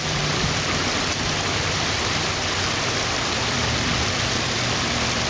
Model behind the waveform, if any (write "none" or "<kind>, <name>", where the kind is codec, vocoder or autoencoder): vocoder, BigVGAN v2